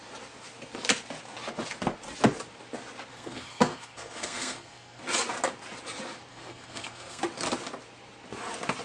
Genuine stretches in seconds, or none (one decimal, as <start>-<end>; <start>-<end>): 0.0-3.1; 5.0-6.3; 7.2-8.8

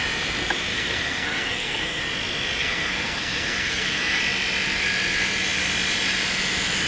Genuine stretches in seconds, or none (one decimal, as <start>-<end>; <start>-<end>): 0.0-0.7; 2.0-2.6; 4.2-6.9

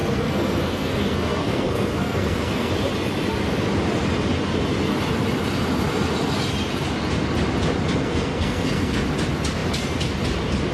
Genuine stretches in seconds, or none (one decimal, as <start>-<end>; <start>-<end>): 2.7-7.9; 9.0-10.7

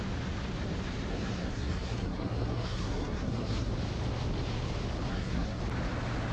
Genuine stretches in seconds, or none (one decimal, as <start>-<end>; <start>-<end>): 0.0-1.1; 3.7-5.1; 5.6-6.3

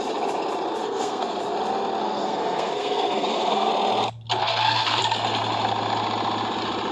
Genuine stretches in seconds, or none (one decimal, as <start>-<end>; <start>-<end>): 0.0-0.8; 1.4-2.0; 3.7-4.4; 5.0-6.9

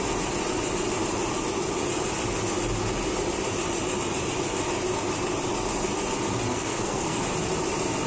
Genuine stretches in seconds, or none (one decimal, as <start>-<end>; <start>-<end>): 0.0-6.5; 7.2-8.1